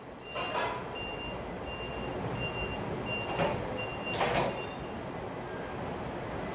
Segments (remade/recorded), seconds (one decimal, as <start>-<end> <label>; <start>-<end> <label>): 0.0-6.5 recorded